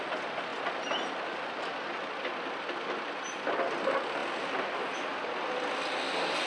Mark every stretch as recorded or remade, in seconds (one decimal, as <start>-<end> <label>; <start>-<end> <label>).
0.0-6.5 recorded